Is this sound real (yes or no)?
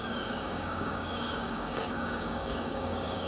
no